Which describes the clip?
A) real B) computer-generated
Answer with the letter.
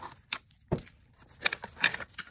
A